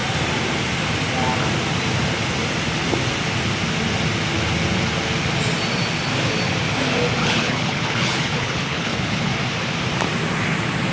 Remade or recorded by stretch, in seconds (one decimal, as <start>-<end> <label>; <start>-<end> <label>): 0.0-7.2 recorded; 7.2-9.3 remade; 9.3-10.9 recorded